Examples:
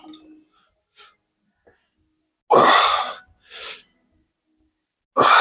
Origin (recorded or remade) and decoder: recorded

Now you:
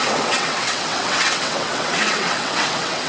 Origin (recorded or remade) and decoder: remade, vocoder, WaveNeXt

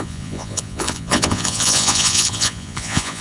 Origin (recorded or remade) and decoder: remade, vocoder, Vocos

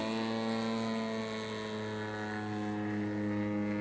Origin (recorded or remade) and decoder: recorded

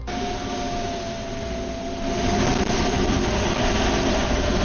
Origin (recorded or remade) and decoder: recorded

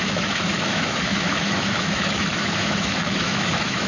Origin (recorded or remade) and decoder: remade, autoencoder, DAC-VAE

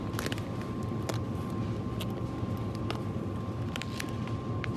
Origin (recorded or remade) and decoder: recorded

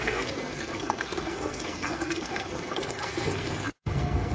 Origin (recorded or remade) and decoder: remade, codec, SNAC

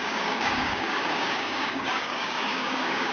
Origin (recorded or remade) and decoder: remade, codec, DAC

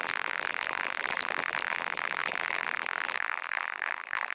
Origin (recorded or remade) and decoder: remade, vocoder, BigVGAN v2